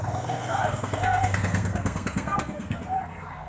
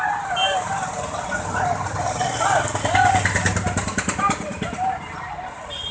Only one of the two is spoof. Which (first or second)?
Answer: first